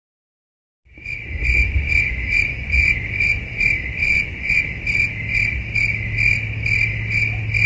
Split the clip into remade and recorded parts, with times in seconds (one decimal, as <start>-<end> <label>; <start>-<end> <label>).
0.0-0.9 recorded; 0.9-3.5 remade; 3.5-4.0 recorded; 4.0-4.6 remade; 4.6-7.7 recorded